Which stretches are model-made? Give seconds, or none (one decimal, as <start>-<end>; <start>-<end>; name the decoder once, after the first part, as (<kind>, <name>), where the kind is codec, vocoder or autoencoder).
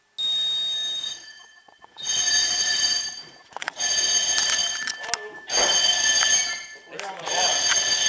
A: 1.0-3.8 (vocoder, Vocos)